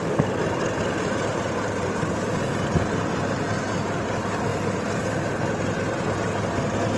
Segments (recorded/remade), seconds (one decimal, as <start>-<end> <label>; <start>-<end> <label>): 0.0-1.3 recorded; 1.3-2.3 remade; 2.3-4.5 recorded; 4.5-5.3 remade; 5.3-7.0 recorded